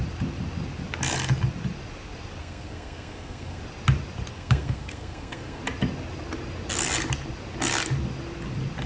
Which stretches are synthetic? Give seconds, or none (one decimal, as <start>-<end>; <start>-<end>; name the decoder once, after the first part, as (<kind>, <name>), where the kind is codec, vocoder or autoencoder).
2.4-3.6 (codec, SNAC); 4.3-5.6